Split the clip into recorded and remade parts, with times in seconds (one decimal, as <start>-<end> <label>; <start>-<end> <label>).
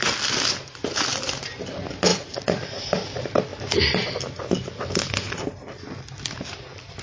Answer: 0.0-2.1 recorded; 2.1-2.8 remade; 2.8-7.0 recorded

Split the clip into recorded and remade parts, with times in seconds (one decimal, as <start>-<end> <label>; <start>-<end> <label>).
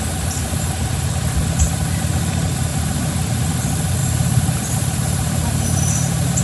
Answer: 0.0-2.7 recorded; 2.7-3.3 remade; 3.3-4.0 recorded; 4.0-6.4 remade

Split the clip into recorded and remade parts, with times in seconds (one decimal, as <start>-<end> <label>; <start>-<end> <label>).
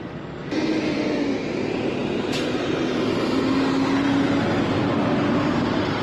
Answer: 0.0-6.0 recorded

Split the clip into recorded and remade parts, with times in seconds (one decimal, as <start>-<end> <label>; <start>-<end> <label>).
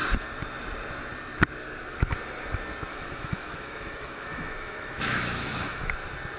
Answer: 0.0-2.9 recorded; 2.9-5.9 remade; 5.9-6.4 recorded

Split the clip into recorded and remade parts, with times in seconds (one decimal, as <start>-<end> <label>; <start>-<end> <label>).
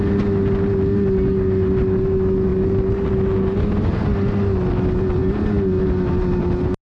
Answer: 0.0-7.0 recorded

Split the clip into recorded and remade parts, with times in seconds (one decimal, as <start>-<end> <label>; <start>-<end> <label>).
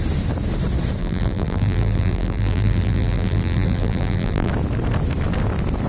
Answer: 0.0-1.0 recorded; 1.0-4.5 remade; 4.5-5.9 recorded